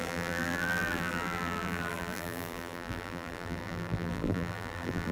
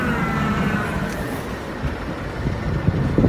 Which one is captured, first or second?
second